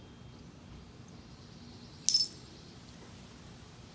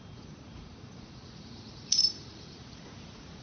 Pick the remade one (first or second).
second